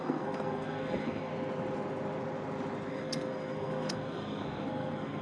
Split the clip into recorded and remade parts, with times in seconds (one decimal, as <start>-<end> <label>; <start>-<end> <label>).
0.0-1.3 remade; 1.3-2.9 recorded; 2.9-5.2 remade